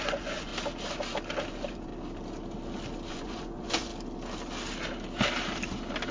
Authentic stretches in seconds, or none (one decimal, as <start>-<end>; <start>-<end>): 0.5-1.5; 1.9-3.1; 3.9-6.1